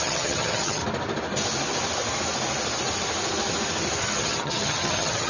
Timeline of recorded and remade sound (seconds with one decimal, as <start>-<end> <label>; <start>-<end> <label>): 0.0-0.8 remade; 0.8-4.0 recorded; 4.0-5.3 remade